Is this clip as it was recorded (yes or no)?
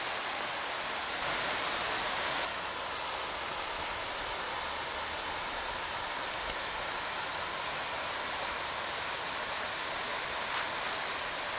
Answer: yes